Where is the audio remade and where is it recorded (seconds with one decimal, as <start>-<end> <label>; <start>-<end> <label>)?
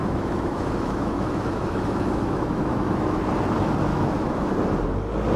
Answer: 0.0-3.2 remade; 3.2-3.9 recorded; 3.9-4.4 remade; 4.4-5.4 recorded